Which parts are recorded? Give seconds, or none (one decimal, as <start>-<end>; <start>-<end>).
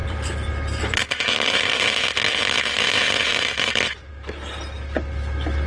1.3-3.3; 4.1-5.7